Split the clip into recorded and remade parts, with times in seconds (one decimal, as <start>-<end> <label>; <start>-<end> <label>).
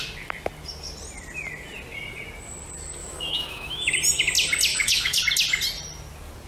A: 0.0-3.0 recorded; 3.0-3.9 remade; 3.9-4.7 recorded; 4.7-5.2 remade; 5.2-6.5 recorded